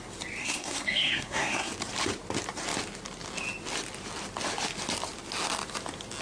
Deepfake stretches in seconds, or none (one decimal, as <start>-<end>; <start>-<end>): 0.4-1.7